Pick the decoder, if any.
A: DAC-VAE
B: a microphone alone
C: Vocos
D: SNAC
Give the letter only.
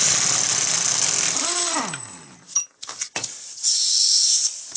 B